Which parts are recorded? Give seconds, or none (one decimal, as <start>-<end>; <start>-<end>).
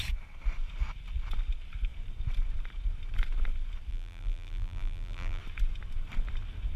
0.0-3.9; 5.4-6.8